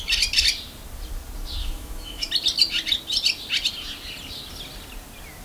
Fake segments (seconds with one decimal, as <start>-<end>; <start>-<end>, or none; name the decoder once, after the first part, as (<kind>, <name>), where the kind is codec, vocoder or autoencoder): 1.6-2.3 (autoencoder, DAC-VAE)